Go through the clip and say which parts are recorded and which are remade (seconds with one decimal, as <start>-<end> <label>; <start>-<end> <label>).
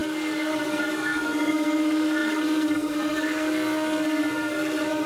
0.0-5.1 remade